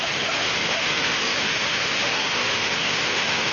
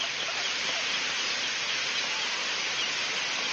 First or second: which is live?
second